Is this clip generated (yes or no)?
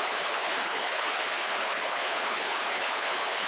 yes